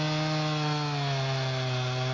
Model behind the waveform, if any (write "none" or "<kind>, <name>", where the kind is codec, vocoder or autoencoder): none